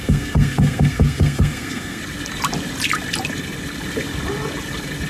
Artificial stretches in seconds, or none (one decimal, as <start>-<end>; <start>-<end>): 0.0-2.0